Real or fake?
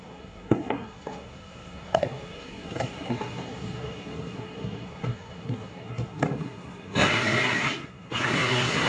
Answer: fake